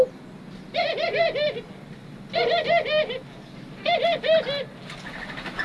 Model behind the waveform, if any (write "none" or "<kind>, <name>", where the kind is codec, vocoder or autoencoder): none